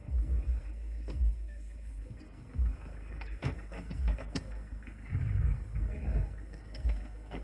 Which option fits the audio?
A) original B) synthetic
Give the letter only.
B